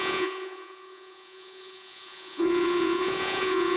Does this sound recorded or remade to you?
remade